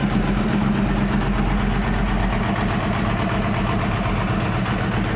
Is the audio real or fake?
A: real